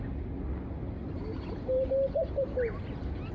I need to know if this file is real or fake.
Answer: real